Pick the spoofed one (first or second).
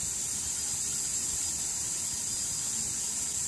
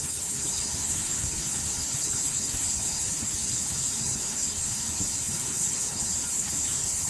second